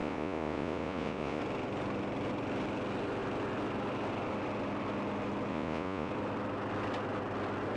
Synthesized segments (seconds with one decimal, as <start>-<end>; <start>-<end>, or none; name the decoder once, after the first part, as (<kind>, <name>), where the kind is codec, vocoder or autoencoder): 0.0-1.4 (vocoder, Vocos); 5.5-6.1